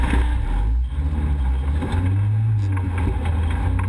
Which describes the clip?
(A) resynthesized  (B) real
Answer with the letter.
B